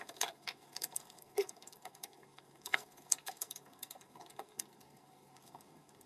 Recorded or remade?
remade